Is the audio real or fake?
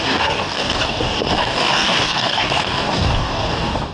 fake